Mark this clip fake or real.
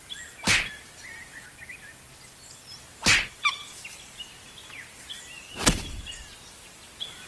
real